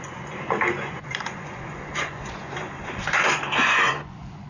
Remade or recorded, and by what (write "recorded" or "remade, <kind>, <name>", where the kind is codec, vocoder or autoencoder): remade, vocoder, Vocos